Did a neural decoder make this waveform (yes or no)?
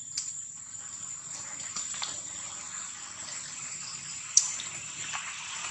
no